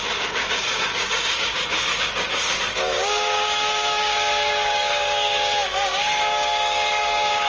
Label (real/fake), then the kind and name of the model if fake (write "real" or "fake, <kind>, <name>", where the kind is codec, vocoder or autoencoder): fake, codec, DAC